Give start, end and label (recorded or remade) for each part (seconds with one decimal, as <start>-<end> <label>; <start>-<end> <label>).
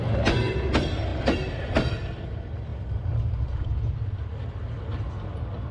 0.0-5.7 recorded